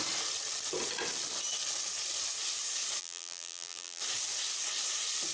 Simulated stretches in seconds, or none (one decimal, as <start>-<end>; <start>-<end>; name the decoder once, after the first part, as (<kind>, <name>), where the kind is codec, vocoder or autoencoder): 3.0-4.0 (vocoder, BigVGAN v2)